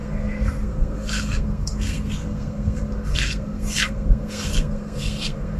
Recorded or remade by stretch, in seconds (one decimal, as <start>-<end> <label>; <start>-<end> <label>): 0.0-5.6 remade